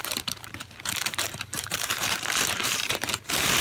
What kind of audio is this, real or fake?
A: fake